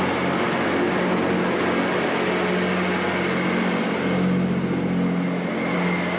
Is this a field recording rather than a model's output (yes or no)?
yes